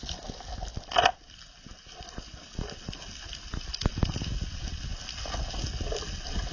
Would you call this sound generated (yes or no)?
no